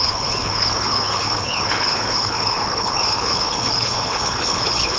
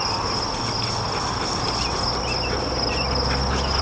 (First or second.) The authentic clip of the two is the second